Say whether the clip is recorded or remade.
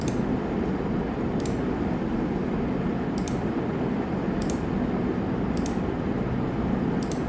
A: recorded